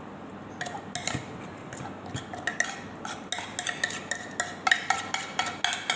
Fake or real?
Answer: real